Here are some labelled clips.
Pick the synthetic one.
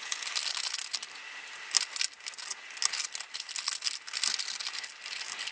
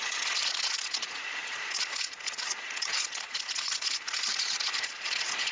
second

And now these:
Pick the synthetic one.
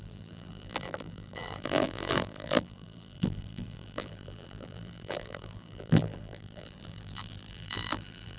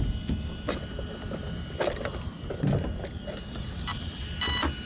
first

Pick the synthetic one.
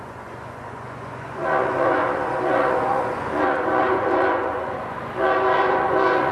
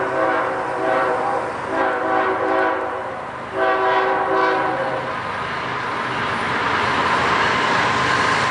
first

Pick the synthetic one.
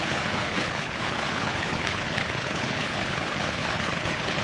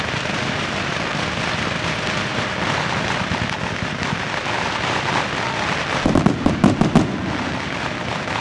first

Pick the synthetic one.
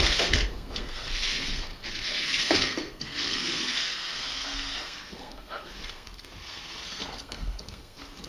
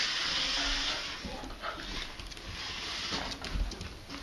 first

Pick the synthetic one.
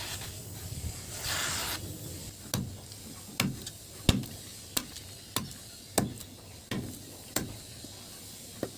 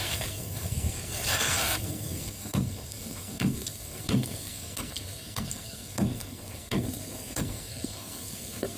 second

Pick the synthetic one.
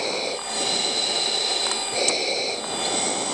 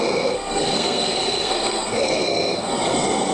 second